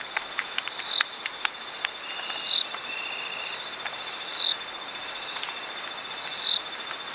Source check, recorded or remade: recorded